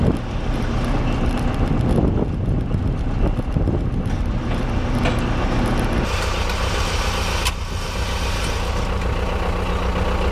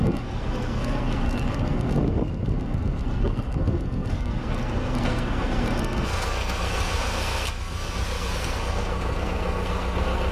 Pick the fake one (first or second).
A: second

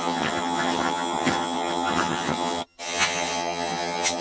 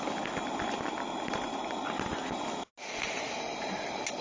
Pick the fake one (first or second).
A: first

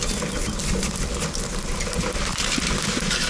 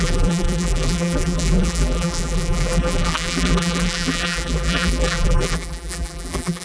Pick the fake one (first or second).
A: second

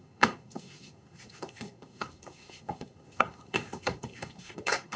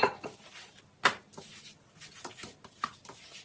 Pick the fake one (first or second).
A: first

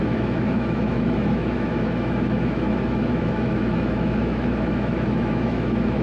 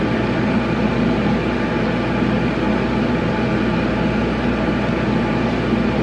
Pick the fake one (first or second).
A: first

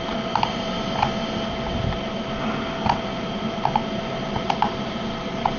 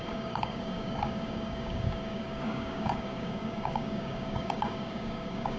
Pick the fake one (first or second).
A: second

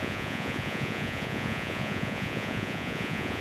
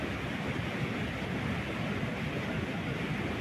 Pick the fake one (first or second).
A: first